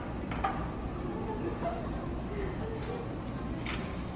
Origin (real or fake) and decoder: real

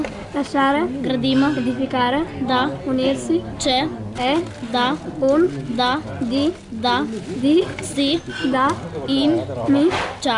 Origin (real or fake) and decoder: real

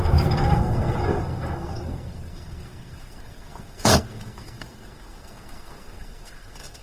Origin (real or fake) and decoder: fake, codec, SNAC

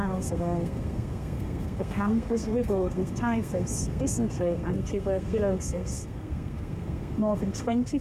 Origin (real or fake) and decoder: fake, codec, SNAC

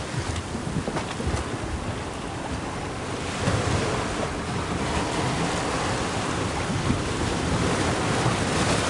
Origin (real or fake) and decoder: real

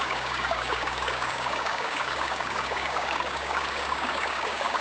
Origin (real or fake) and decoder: fake, codec, DAC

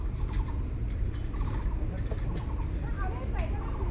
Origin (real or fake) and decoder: real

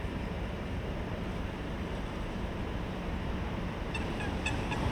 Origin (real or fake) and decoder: fake, vocoder, BigVGAN v2